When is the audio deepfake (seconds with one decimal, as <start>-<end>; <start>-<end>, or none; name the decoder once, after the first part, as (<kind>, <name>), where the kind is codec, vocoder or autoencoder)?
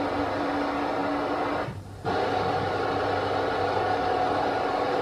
none